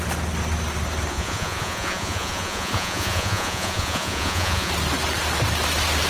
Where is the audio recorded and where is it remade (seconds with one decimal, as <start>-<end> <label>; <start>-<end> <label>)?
0.0-1.1 recorded; 1.1-4.7 remade; 4.7-6.1 recorded